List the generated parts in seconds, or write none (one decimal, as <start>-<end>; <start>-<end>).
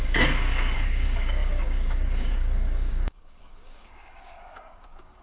0.0-5.2